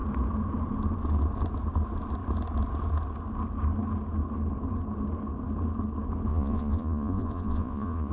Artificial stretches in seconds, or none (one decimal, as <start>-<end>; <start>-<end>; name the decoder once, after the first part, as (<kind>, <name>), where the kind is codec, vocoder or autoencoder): 6.3-8.1 (vocoder, Vocos)

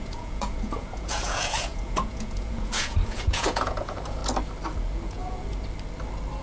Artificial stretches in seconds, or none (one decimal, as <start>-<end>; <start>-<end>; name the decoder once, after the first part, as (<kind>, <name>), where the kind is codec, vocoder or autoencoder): 0.0-4.2 (vocoder, Vocos); 4.8-5.2